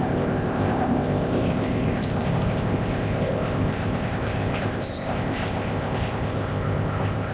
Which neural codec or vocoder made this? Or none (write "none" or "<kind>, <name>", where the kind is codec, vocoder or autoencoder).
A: codec, ZipCodec